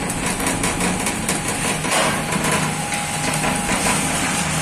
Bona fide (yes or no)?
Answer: yes